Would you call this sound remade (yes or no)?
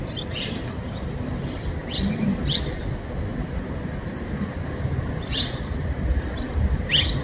yes